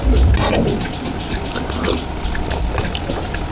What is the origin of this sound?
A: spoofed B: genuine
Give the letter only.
B